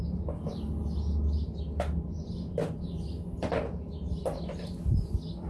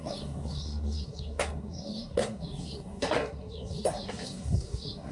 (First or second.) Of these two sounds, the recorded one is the first